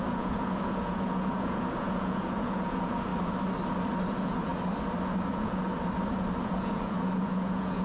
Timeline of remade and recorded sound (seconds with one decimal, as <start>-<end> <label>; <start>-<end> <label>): 0.0-3.1 remade; 3.1-4.1 recorded; 4.1-4.5 remade; 4.5-5.3 recorded; 5.3-5.7 remade; 5.7-6.4 recorded; 6.4-7.8 remade